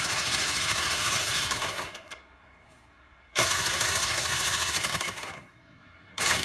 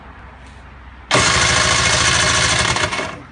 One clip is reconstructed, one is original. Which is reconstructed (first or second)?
first